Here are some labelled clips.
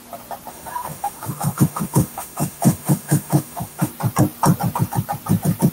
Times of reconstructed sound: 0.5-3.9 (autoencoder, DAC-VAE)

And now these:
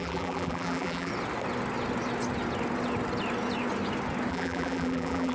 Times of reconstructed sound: 0.0-1.1 (vocoder, BigVGAN v2); 4.3-5.3

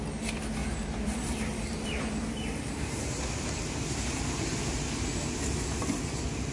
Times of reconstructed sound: 0.6-4.2 (vocoder, BigVGAN v2)

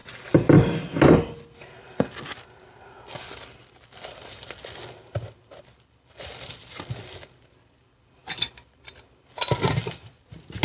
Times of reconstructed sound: none

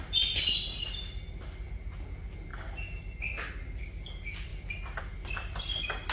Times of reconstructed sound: 4.5-5.0 (vocoder, BigVGAN v2)